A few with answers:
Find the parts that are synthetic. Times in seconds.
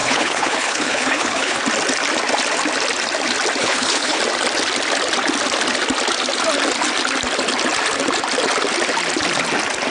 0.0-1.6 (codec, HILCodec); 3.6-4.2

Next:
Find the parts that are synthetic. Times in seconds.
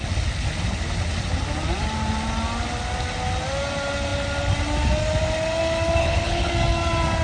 6.0-6.5 (codec, HILCodec)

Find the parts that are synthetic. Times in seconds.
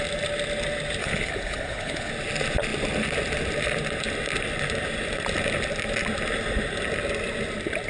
1.0-2.1 (codec, HILCodec)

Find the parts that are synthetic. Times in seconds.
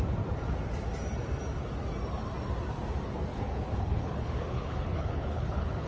3.3-5.9 (codec, HILCodec)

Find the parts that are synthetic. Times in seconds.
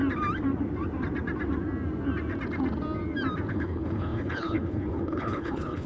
3.5-5.9 (codec, HILCodec)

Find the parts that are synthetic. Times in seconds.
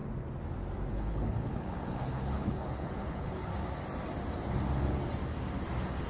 0.9-3.5 (codec, HILCodec)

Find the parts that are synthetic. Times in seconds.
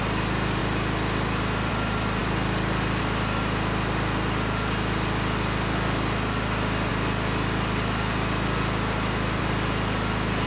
none